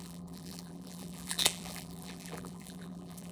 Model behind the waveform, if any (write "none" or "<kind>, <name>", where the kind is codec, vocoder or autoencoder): vocoder, BigVGAN v2